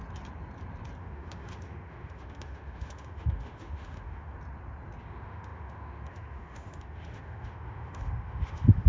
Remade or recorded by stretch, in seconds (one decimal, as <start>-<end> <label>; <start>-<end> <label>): 0.0-1.0 recorded; 1.0-4.3 remade; 4.3-5.0 recorded; 5.0-8.9 remade